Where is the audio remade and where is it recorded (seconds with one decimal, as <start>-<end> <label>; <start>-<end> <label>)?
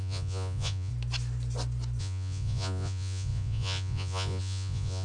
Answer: 0.0-0.9 remade; 0.9-2.0 recorded; 2.0-5.0 remade